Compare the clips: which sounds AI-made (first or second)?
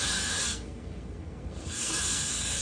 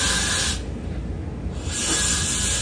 first